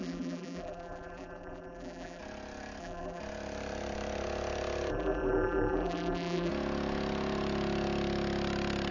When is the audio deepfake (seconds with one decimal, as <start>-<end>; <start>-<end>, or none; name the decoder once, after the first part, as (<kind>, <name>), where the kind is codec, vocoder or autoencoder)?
0.0-2.2 (vocoder, BigVGAN v2); 2.8-3.2; 4.9-6.5

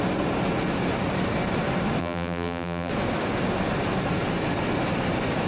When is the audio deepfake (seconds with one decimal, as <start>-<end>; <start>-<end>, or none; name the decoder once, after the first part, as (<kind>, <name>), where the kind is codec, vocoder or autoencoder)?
2.0-2.9 (vocoder, BigVGAN v2)

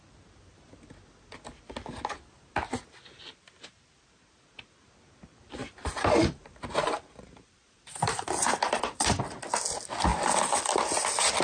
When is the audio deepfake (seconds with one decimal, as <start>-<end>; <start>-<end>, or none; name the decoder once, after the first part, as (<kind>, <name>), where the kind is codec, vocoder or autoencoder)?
5.6-9.2 (vocoder, BigVGAN v2)

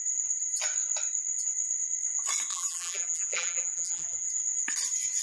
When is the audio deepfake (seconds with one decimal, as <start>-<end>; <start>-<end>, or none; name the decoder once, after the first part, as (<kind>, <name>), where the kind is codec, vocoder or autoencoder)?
2.5-4.3 (vocoder, BigVGAN v2)

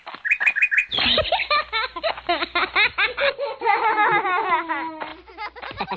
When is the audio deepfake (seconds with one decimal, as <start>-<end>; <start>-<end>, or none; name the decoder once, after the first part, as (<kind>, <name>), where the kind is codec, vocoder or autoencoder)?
0.8-2.1 (vocoder, BigVGAN v2); 5.1-6.0

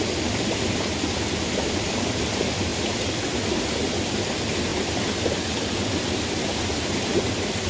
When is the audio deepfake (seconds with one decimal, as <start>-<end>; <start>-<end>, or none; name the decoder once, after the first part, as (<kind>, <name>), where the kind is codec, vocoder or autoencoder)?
none